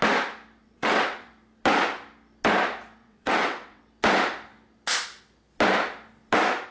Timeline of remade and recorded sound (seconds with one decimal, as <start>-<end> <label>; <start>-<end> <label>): 0.0-0.6 recorded; 0.6-1.3 remade; 1.3-3.0 recorded; 3.0-3.8 remade; 3.8-6.7 recorded